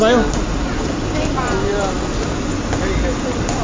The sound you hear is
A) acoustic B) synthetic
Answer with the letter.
A